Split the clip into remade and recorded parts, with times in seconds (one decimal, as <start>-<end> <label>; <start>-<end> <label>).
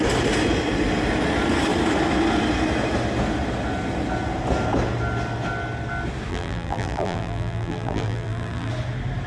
0.0-6.3 recorded; 6.3-8.7 remade; 8.7-9.3 recorded